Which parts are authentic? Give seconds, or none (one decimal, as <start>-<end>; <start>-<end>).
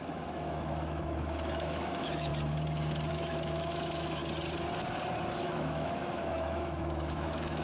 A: 2.3-3.1; 4.2-5.4